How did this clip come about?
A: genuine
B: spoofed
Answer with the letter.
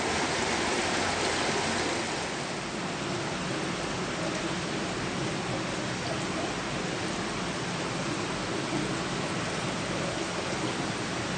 A